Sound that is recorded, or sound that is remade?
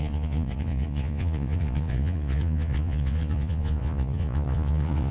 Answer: remade